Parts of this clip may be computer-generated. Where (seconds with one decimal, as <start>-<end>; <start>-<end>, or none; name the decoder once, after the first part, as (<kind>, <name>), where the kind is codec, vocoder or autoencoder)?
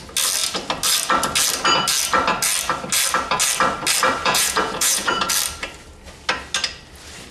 4.2-5.3 (vocoder, Vocos)